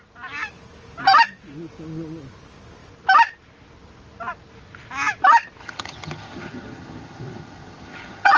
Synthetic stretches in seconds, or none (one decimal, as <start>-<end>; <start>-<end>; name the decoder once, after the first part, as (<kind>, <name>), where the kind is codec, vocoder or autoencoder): 5.6-8.4 (vocoder, HiFi-GAN)